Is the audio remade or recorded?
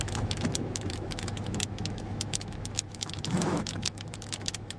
remade